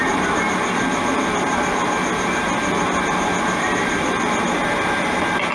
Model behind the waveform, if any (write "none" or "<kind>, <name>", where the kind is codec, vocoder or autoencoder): none